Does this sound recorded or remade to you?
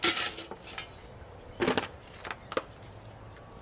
recorded